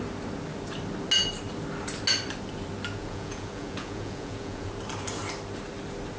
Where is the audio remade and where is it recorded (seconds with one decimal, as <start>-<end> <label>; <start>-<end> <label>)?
0.0-3.0 recorded; 3.0-4.7 remade; 4.7-6.2 recorded